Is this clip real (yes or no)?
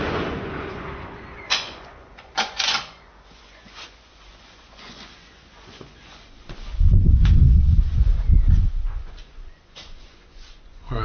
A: no